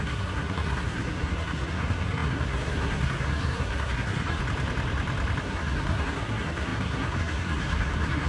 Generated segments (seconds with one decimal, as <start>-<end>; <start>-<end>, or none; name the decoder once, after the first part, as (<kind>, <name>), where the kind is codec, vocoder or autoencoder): 0.0-4.4 (codec, SNAC); 5.4-8.3